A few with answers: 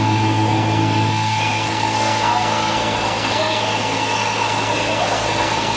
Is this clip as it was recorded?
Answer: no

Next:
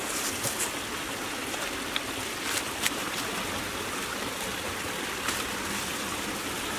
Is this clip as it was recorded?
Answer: yes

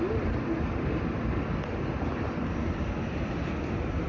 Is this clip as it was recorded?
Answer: yes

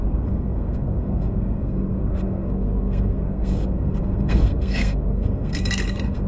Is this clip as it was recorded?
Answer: no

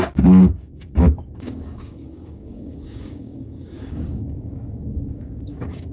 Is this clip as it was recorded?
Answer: no